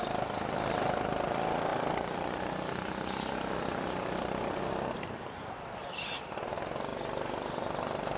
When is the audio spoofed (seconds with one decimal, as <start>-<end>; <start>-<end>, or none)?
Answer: none